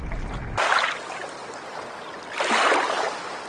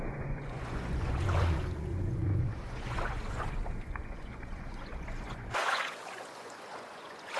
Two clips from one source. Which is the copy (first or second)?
second